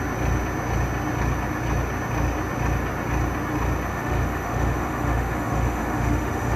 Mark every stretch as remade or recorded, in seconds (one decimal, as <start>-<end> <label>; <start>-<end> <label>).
0.0-3.9 recorded; 3.9-6.6 remade